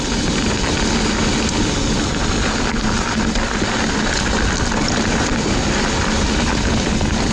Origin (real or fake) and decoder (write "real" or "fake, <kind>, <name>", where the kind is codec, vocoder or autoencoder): real